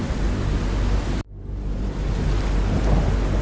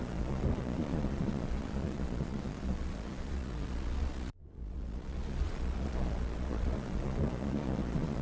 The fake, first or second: second